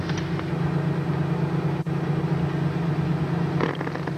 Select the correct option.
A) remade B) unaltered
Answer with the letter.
B